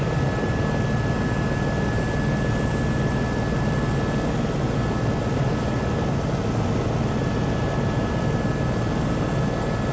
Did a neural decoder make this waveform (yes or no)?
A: no